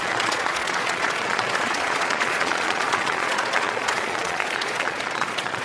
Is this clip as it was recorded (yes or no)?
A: no